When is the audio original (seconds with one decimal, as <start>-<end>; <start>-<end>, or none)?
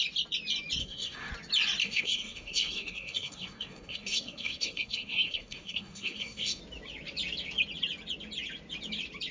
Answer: 0.0-0.8; 1.3-1.8; 6.6-9.3